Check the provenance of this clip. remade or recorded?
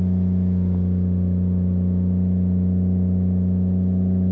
recorded